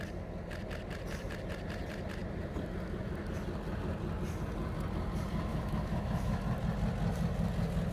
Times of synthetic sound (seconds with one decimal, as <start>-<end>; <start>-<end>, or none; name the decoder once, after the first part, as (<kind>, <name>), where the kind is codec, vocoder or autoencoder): 5.5-6.4 (autoencoder, DAC-VAE)